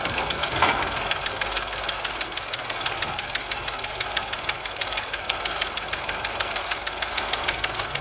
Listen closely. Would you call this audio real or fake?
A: fake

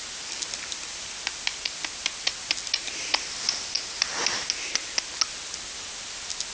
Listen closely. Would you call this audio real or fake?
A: real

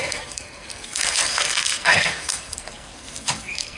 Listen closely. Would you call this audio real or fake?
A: fake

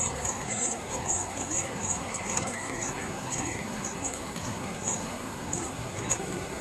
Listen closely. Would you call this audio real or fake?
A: fake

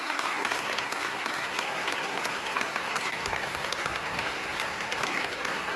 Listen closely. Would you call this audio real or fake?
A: fake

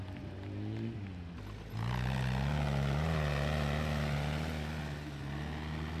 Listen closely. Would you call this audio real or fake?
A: real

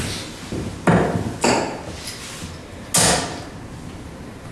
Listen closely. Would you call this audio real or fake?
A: real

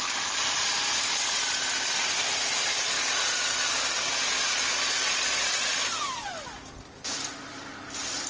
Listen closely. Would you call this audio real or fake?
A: real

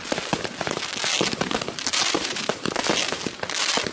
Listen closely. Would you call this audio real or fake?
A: real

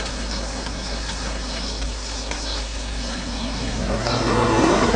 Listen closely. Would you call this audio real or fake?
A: fake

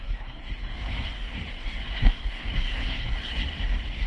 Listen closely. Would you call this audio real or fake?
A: fake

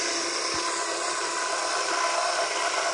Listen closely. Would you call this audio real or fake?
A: real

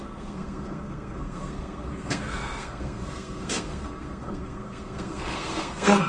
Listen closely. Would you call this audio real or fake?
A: fake